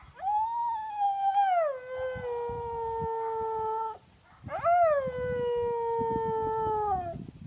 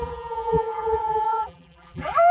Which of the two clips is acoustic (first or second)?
first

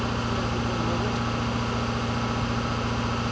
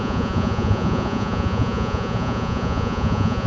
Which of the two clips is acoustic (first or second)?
first